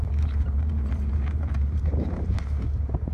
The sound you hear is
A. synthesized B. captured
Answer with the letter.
A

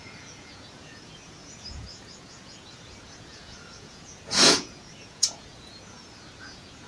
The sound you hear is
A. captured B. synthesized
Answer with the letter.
B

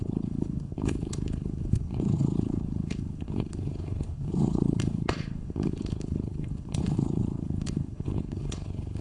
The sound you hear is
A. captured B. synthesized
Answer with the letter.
B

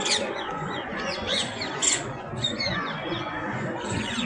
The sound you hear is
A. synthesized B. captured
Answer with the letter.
A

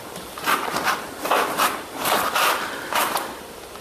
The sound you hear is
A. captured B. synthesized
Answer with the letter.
B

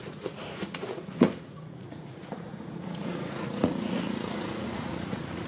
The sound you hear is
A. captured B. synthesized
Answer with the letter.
B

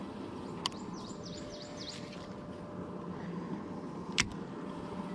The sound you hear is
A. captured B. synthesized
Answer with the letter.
A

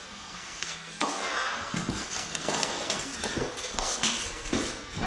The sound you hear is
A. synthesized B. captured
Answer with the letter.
A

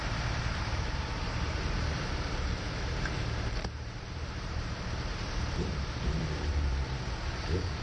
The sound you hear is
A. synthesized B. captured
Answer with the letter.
A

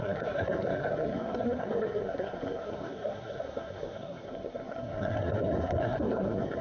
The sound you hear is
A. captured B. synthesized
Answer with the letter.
B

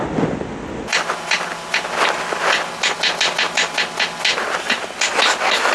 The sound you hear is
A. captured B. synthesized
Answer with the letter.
A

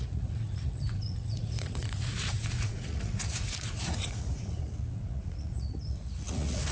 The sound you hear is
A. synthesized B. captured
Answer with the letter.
A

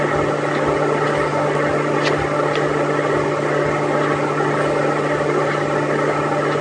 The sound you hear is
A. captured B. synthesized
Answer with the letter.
A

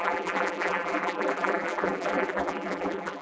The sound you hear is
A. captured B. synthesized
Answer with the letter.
B